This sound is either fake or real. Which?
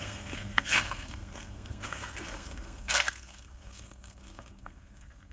fake